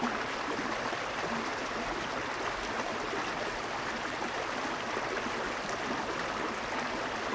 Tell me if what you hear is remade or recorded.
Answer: recorded